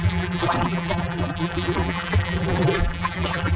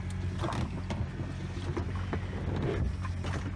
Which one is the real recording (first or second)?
second